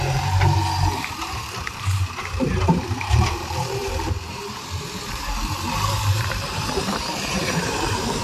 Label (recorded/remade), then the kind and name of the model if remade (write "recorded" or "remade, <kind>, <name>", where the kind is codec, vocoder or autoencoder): remade, vocoder, BigVGAN v2